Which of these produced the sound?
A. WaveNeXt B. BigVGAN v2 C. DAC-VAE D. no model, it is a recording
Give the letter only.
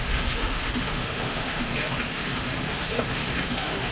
C